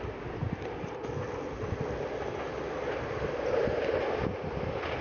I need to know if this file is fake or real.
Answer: real